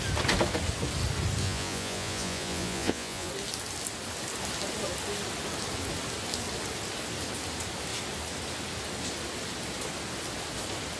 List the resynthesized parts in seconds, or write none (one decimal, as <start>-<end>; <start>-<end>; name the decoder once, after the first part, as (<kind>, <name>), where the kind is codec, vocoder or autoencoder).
1.4-3.3 (vocoder, Vocos)